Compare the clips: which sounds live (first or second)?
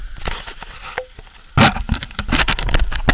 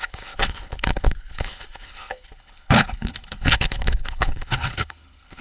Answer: first